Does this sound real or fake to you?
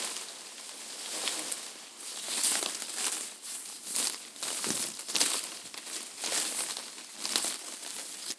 real